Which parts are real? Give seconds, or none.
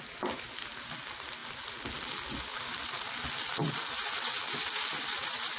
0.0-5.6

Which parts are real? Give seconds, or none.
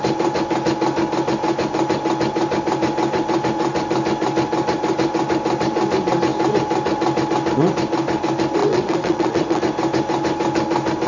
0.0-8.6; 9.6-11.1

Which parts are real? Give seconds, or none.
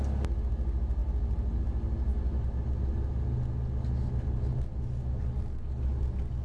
0.0-6.4